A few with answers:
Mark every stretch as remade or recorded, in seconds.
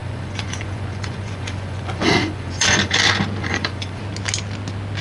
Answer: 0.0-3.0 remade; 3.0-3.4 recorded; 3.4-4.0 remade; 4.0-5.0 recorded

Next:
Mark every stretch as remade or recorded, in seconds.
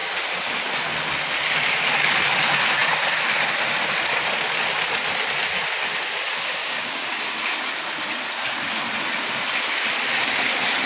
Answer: 0.0-6.6 recorded; 6.6-7.2 remade; 7.2-10.9 recorded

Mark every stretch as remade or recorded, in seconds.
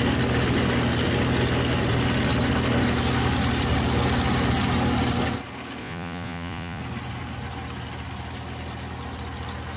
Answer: 0.0-5.8 recorded; 5.8-6.8 remade; 6.8-9.8 recorded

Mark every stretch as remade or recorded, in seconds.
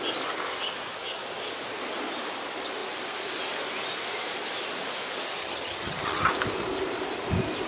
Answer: 0.0-5.4 recorded; 5.4-6.3 remade; 6.3-7.7 recorded